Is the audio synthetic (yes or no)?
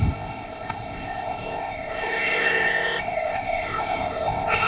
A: yes